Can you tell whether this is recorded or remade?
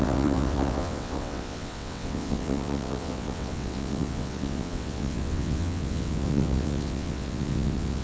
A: remade